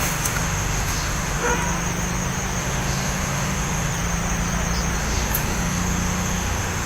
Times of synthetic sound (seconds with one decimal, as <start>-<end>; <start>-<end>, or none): 0.0-1.5; 2.6-3.9; 5.0-6.9

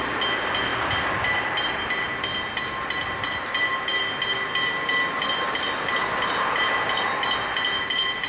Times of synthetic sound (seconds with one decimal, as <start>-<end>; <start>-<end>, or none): none

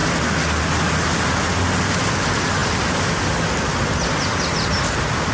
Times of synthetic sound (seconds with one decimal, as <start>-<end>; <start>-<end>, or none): none

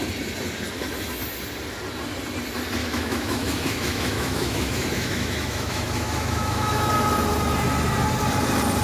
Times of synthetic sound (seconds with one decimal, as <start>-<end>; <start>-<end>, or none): 2.8-6.9

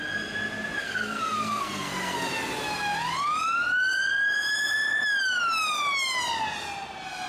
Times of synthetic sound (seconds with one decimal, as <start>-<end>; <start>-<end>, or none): 0.8-2.3

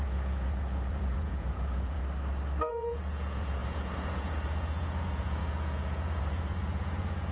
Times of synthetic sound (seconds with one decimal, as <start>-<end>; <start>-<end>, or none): 0.0-2.0; 2.7-7.3

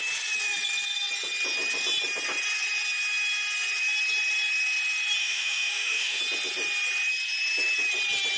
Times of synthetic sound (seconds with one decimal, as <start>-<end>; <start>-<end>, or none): 5.2-6.2